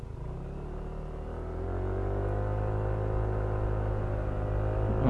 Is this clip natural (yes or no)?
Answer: yes